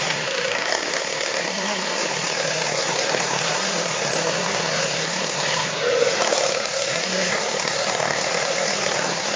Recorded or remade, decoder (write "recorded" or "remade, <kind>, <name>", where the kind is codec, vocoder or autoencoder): remade, codec, SNAC